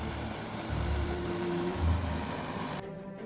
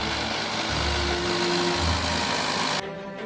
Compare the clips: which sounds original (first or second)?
second